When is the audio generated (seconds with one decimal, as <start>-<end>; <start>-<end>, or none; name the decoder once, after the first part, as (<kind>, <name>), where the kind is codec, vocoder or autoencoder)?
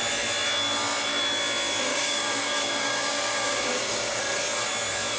1.9-4.2 (codec, DAC)